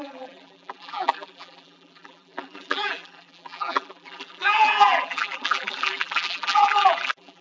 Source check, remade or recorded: remade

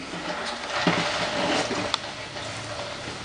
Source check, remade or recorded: recorded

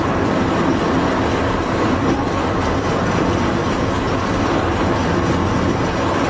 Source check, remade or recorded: recorded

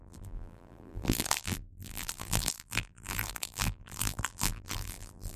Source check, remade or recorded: remade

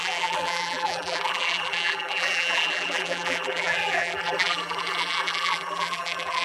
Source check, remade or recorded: remade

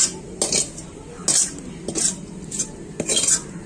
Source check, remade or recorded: recorded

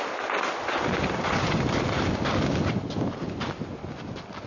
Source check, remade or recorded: recorded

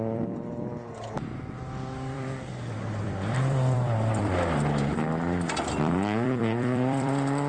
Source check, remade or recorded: remade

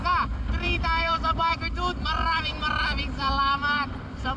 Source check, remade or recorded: remade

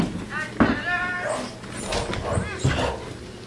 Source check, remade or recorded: recorded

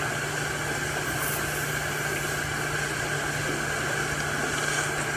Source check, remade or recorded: recorded